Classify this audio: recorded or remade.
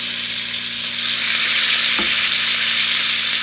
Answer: recorded